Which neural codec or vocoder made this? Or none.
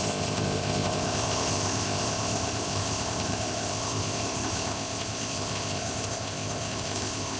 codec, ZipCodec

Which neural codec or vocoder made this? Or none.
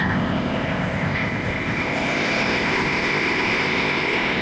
codec, ZipCodec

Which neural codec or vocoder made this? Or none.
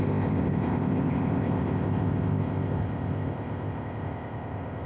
codec, ZipCodec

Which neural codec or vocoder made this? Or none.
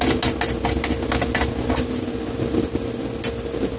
none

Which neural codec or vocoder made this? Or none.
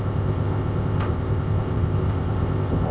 codec, ZipCodec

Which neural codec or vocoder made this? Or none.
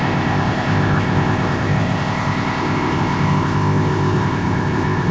codec, ZipCodec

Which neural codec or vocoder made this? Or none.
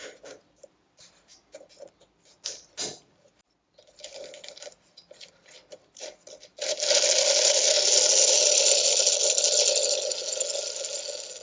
none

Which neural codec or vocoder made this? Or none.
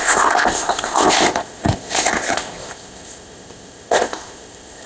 codec, ZipCodec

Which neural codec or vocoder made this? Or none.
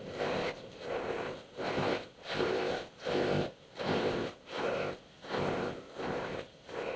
codec, ZipCodec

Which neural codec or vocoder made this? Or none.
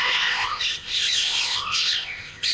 codec, ZipCodec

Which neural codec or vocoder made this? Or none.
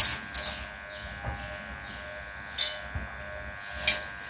none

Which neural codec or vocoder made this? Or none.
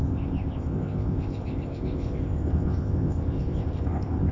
codec, ZipCodec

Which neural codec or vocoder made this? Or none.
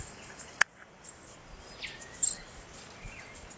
none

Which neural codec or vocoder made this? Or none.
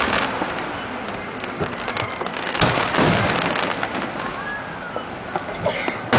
none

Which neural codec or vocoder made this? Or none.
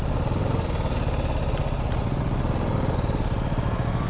none